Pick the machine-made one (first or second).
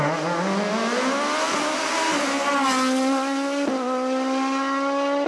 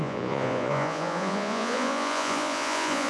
second